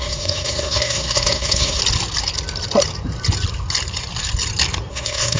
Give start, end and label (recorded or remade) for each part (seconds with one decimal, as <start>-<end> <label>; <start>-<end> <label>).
0.0-1.8 remade; 1.8-4.9 recorded; 4.9-5.4 remade